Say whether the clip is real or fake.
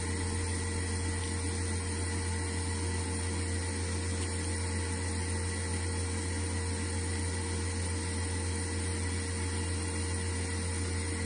real